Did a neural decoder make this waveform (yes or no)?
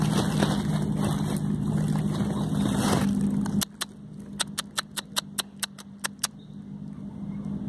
no